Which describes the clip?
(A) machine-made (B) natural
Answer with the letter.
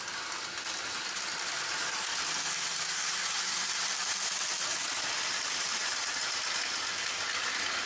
B